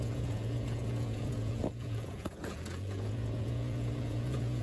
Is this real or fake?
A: fake